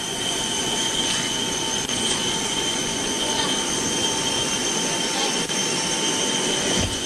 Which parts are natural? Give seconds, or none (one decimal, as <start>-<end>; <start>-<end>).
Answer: 5.6-6.3